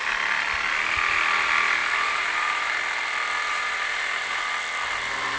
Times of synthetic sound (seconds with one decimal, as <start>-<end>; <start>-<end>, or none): 1.8-2.8; 3.5-4.5

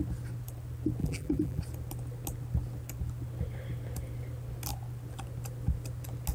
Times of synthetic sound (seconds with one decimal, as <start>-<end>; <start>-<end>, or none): 1.0-1.6

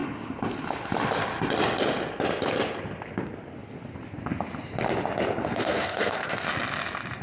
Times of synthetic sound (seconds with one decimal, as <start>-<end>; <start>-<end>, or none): 5.4-6.5